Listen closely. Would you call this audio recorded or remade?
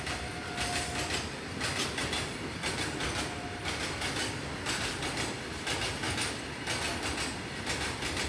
recorded